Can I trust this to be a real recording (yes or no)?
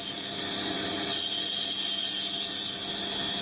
yes